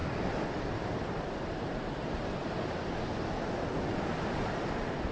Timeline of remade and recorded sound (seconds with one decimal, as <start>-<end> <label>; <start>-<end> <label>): 0.0-5.1 recorded